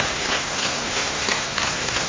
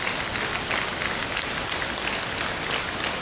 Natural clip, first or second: second